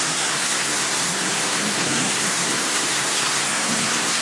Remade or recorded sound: remade